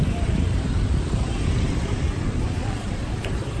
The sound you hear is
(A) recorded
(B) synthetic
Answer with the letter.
B